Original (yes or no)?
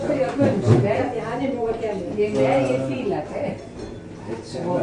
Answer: yes